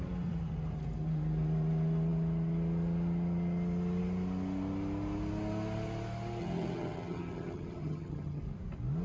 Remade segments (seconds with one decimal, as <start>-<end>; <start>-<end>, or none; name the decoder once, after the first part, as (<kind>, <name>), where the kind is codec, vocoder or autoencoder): 6.4-8.4 (vocoder, HiFi-GAN)

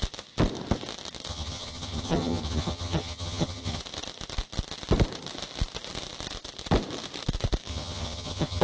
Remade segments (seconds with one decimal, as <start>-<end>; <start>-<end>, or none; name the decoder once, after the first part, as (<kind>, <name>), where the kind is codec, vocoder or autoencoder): 1.3-3.8 (vocoder, HiFi-GAN); 7.7-8.6

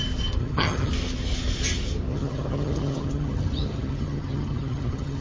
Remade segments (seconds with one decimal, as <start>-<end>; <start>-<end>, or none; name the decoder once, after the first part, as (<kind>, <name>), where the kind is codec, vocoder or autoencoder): 0.4-0.9 (vocoder, HiFi-GAN); 2.1-5.2

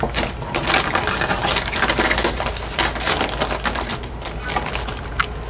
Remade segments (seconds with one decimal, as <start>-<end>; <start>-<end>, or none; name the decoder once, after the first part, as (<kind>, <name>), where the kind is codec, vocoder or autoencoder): none